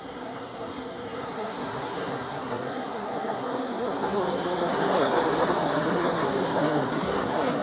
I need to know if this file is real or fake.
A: fake